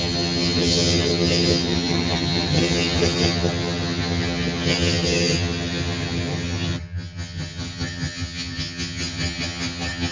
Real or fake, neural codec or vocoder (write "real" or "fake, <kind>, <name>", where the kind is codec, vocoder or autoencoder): fake, vocoder, HiFi-GAN